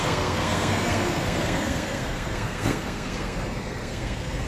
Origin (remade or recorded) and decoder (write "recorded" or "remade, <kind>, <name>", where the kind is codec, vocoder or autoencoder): remade, codec, SNAC